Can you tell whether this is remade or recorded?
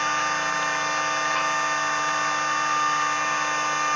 recorded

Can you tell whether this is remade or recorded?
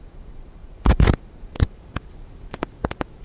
remade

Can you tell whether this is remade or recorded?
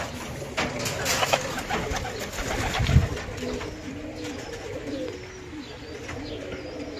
recorded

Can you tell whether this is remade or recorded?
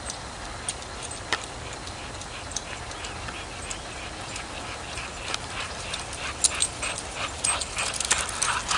recorded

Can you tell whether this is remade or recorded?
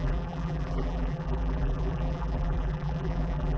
remade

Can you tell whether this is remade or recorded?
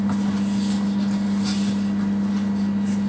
recorded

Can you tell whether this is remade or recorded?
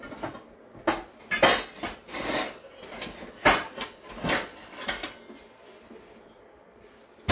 recorded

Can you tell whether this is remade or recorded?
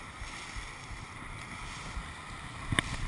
recorded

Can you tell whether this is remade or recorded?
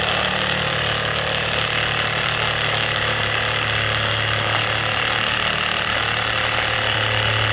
remade